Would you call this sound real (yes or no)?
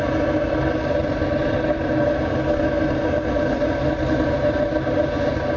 yes